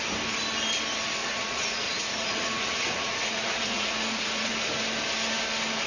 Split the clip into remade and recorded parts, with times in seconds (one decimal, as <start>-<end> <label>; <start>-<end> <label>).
0.0-1.2 recorded; 1.2-4.5 remade; 4.5-5.9 recorded